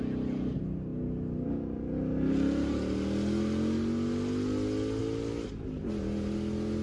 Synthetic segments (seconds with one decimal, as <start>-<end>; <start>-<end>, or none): none